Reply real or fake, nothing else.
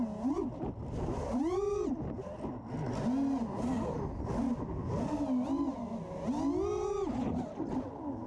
real